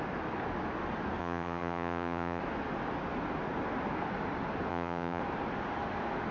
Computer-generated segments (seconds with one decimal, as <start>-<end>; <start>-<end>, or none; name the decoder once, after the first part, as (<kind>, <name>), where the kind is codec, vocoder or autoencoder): 1.2-2.4 (vocoder, HiFi-GAN); 4.7-5.2